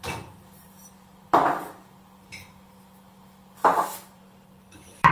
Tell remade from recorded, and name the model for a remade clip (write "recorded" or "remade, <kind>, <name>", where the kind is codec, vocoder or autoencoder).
remade, vocoder, BigVGAN v2